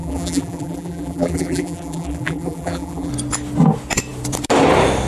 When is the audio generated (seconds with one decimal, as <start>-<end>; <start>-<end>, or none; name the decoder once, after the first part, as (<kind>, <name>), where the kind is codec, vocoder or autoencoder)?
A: 0.0-3.1 (vocoder, BigVGAN v2)